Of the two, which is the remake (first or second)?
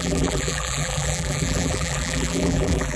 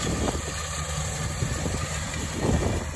first